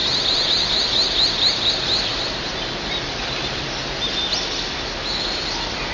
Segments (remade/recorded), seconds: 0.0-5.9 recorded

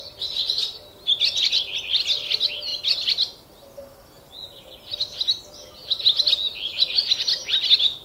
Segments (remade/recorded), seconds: 0.0-8.0 recorded

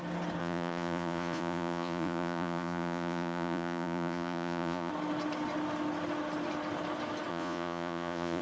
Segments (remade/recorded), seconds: 0.0-0.4 recorded; 0.4-4.9 remade; 4.9-7.3 recorded; 7.3-8.4 remade

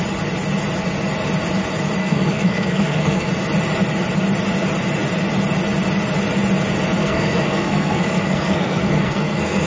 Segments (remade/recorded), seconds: 0.0-2.0 recorded; 2.0-3.3 remade; 3.3-7.0 recorded; 7.0-9.7 remade

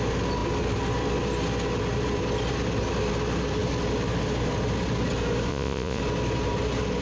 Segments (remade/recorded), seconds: 0.0-5.5 recorded; 5.5-6.0 remade; 6.0-7.0 recorded

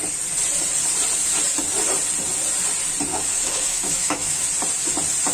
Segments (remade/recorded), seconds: 0.0-3.1 recorded; 3.1-4.4 remade; 4.4-5.3 recorded

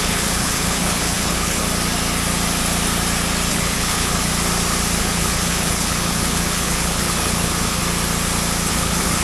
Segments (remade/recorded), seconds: 0.0-1.6 remade; 1.6-3.5 recorded; 3.5-4.3 remade; 4.3-5.0 recorded; 5.0-7.8 remade; 7.8-8.7 recorded; 8.7-9.2 remade

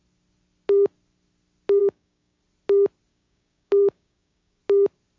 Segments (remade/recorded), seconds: 0.0-1.8 recorded; 1.8-2.4 remade; 2.4-3.1 recorded; 3.1-4.6 remade; 4.6-5.2 recorded